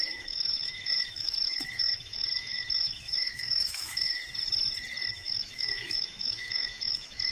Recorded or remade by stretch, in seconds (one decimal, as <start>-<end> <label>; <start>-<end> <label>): 0.0-4.2 remade; 4.2-5.1 recorded; 5.1-7.3 remade